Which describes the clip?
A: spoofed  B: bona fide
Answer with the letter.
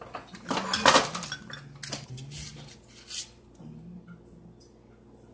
B